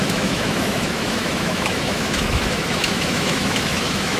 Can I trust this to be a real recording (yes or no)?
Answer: no